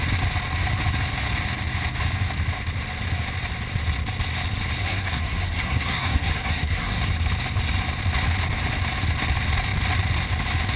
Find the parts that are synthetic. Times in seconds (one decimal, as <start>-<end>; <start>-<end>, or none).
4.8-7.0